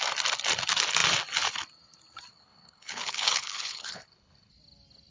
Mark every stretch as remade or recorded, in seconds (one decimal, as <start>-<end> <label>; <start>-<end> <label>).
0.0-2.3 recorded; 2.3-4.5 remade; 4.5-5.1 recorded